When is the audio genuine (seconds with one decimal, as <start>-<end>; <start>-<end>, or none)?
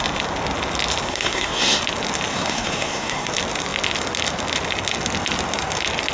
0.0-1.1; 1.8-2.3; 3.3-6.1